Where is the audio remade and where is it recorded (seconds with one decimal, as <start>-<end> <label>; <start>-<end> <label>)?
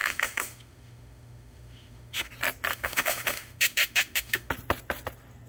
0.0-2.3 remade; 2.3-2.7 recorded; 2.7-4.5 remade; 4.5-5.5 recorded